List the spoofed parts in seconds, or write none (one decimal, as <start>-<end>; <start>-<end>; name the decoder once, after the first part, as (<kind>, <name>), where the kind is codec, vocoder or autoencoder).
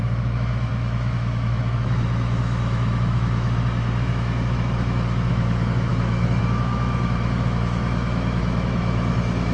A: 0.0-9.5 (autoencoder, DAC-VAE)